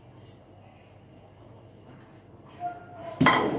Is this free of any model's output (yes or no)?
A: yes